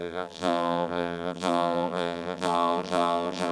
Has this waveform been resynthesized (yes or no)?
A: yes